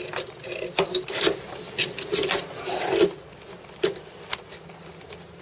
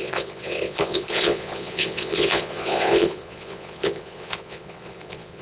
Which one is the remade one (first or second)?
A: second